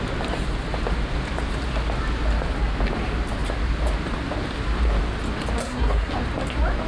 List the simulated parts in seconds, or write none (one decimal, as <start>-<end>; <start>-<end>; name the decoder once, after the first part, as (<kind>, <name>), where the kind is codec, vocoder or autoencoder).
5.6-6.1 (codec, SNAC)